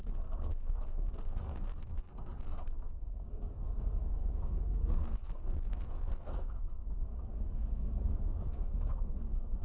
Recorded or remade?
remade